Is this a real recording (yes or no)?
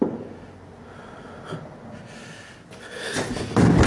yes